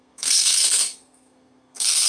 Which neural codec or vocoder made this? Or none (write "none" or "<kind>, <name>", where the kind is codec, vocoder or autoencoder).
codec, SNAC